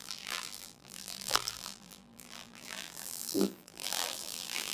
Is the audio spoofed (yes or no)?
yes